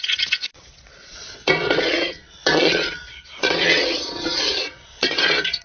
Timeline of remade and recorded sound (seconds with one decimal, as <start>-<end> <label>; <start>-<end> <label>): 0.0-5.6 remade

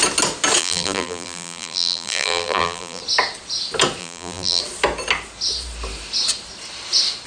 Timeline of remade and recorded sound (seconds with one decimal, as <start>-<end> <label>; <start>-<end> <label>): 0.0-0.6 recorded; 0.6-3.0 remade; 3.0-4.0 recorded; 4.0-4.6 remade; 4.6-7.3 recorded

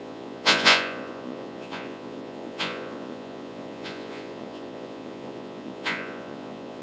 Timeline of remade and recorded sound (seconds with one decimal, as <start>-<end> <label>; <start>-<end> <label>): 0.0-6.8 remade

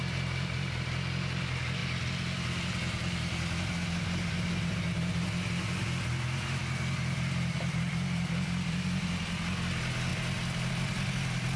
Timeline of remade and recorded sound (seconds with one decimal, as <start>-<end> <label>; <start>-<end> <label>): 0.0-11.6 recorded

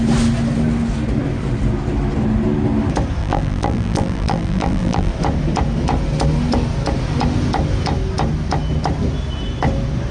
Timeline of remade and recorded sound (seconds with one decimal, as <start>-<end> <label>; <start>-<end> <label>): 0.0-3.2 recorded; 3.2-5.1 remade; 5.1-10.1 recorded

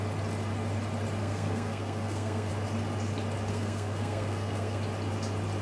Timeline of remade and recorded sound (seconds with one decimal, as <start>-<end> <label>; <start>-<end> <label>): 0.0-1.2 recorded; 1.2-2.5 remade; 2.5-3.5 recorded; 3.5-4.8 remade; 4.8-5.6 recorded